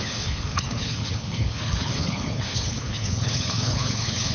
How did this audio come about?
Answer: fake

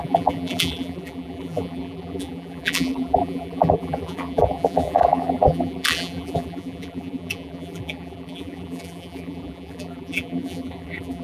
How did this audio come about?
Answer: fake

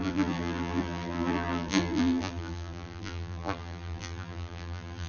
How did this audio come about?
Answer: fake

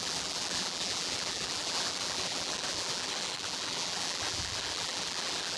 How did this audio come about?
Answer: fake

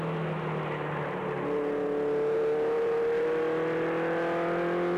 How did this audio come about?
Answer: real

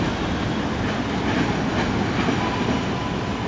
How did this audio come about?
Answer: real